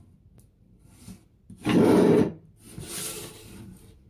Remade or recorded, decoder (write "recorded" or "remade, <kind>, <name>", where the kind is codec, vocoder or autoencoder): recorded